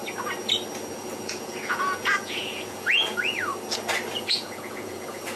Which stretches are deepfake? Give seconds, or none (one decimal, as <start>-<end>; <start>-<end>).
0.9-3.5; 4.2-5.4